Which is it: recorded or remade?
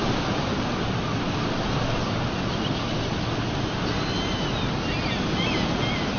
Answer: recorded